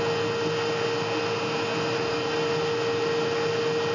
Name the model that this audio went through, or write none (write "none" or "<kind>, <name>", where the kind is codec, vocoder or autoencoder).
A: none